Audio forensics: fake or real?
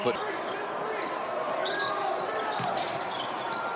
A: real